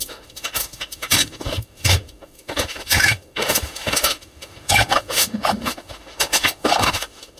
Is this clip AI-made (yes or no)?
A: yes